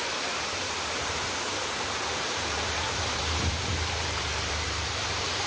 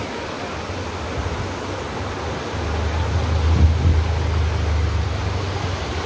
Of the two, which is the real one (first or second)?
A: second